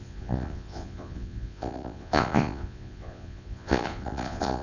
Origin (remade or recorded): remade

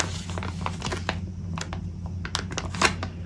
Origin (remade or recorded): recorded